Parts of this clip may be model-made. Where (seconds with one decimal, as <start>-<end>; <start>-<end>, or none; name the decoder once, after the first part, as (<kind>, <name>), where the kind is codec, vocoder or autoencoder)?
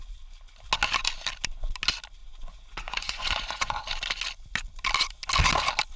2.2-3.8 (vocoder, Vocos)